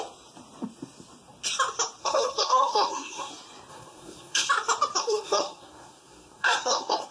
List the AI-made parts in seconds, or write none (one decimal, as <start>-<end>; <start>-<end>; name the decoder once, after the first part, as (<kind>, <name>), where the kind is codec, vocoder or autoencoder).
2.0-3.3 (codec, SNAC); 3.7-4.5; 5.0-7.1